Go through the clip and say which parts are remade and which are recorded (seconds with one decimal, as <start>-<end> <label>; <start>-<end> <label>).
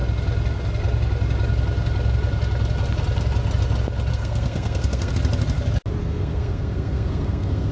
0.0-4.1 recorded; 4.1-5.1 remade; 5.1-6.0 recorded; 6.0-7.7 remade